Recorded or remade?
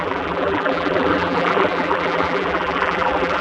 remade